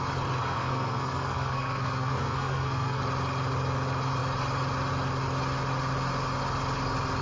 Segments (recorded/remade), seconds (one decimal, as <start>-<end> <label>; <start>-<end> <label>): 0.0-0.4 recorded; 0.4-3.0 remade; 3.0-7.2 recorded